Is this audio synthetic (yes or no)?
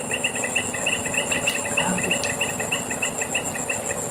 no